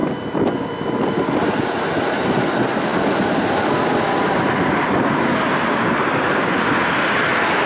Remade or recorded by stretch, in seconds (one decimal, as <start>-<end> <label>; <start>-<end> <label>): 0.0-7.7 recorded